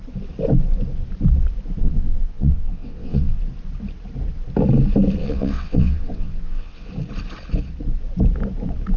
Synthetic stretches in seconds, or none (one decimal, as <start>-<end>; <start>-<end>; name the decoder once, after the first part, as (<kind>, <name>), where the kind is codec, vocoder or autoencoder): 1.8-3.4 (vocoder, WaveNeXt); 5.2-6.9